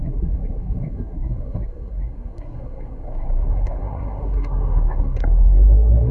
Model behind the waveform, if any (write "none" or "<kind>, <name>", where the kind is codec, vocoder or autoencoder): codec, SNAC